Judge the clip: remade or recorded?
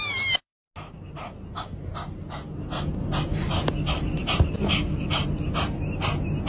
recorded